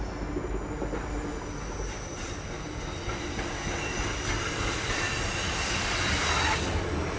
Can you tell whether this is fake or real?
real